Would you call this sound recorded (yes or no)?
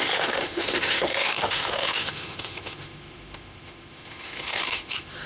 no